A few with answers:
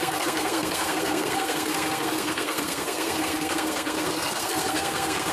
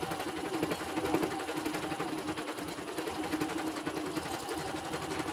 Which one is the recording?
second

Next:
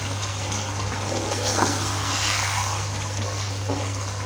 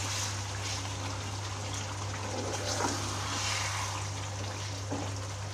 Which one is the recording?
second